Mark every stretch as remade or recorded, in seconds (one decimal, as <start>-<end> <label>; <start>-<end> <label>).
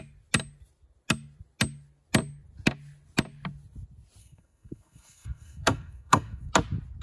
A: 0.0-4.2 recorded; 4.2-6.5 remade; 6.5-7.0 recorded